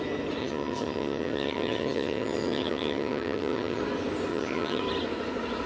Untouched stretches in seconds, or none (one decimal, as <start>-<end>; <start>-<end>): 0.0-0.4; 3.8-4.3; 4.8-5.7